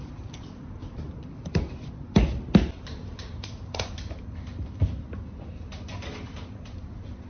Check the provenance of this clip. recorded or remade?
recorded